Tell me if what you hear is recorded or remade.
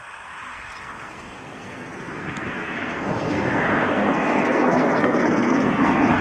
remade